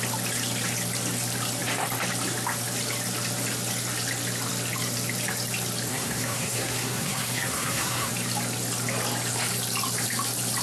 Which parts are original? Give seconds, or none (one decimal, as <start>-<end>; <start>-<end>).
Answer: 0.0-5.9; 8.1-10.6